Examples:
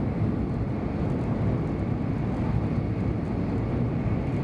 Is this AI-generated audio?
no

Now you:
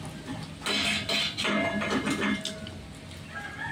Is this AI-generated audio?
no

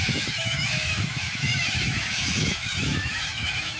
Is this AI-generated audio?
yes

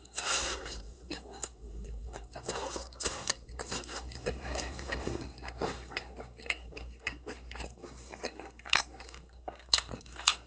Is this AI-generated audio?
yes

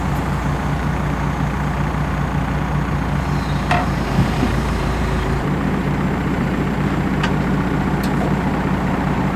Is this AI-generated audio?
yes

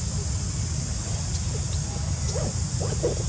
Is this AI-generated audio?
no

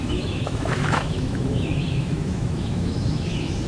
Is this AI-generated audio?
yes